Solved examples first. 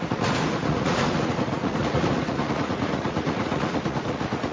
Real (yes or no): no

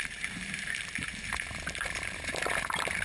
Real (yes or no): no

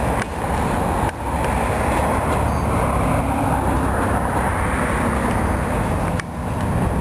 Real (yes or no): yes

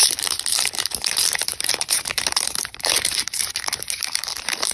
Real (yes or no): no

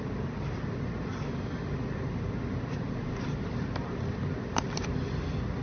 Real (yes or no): yes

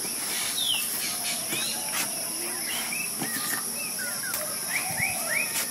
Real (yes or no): yes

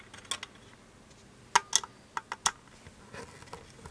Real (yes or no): yes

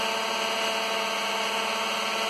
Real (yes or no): yes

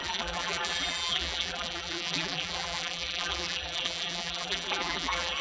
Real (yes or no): no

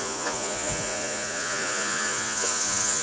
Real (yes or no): no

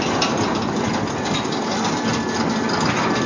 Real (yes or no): yes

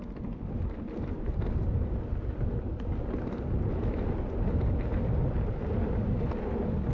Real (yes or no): yes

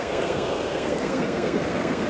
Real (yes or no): no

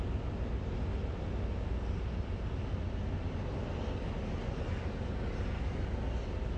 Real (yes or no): yes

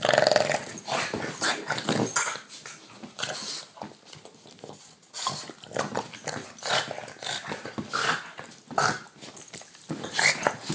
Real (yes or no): yes